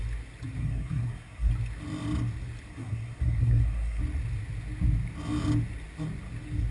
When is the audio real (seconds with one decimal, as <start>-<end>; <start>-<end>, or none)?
0.0-0.6; 1.5-2.7; 4.0-6.7